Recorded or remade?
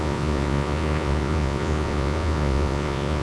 remade